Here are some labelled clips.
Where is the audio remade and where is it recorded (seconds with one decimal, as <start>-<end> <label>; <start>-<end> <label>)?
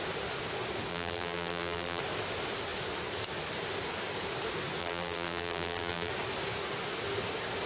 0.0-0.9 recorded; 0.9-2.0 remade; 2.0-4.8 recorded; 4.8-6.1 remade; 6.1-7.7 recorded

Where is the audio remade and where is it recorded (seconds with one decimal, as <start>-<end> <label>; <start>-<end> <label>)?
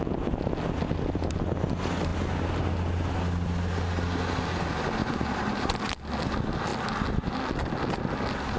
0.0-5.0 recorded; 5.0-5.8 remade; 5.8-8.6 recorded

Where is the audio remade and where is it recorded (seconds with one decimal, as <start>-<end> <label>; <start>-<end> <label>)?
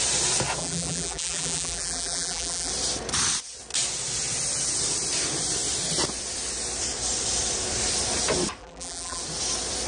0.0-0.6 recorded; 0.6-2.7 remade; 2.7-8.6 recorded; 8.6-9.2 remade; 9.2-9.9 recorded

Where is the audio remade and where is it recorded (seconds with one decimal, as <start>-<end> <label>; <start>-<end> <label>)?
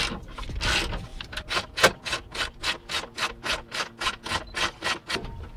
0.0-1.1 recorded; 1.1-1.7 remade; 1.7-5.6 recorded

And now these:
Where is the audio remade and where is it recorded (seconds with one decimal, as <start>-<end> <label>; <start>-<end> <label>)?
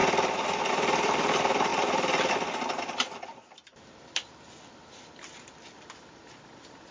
0.0-0.7 recorded; 0.7-6.9 remade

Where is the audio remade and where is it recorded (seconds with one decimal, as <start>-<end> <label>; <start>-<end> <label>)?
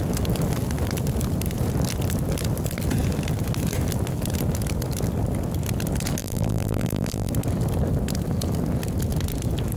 0.0-6.2 recorded; 6.2-7.3 remade; 7.3-9.8 recorded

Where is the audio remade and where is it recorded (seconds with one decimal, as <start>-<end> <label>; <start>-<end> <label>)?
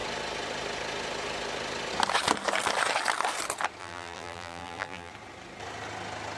0.0-3.8 recorded; 3.8-5.1 remade; 5.1-6.4 recorded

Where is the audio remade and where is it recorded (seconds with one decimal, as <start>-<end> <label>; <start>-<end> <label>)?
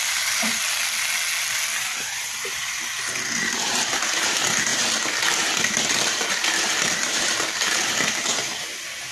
0.0-0.6 remade; 0.6-1.8 recorded; 1.8-2.8 remade; 2.8-3.7 recorded; 3.7-9.1 remade